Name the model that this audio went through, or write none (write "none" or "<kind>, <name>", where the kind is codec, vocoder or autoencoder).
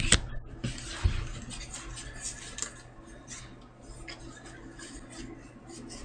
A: none